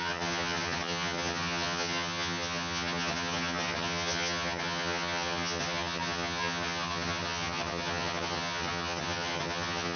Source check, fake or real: fake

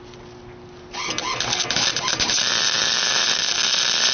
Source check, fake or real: real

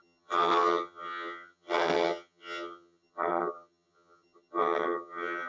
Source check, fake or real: fake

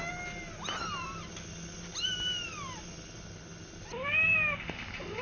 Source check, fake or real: real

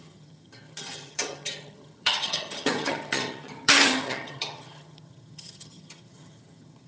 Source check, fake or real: fake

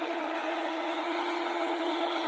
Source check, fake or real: fake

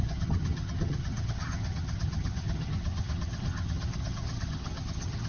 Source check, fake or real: fake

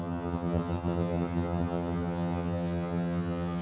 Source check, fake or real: fake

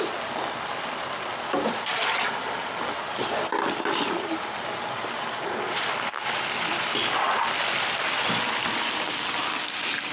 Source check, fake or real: real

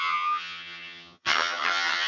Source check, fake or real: fake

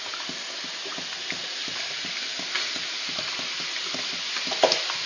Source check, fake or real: real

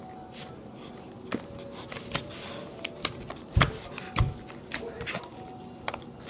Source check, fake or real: real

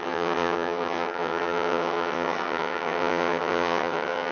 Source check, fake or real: fake